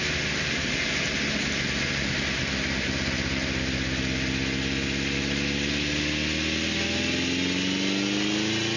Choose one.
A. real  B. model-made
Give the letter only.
A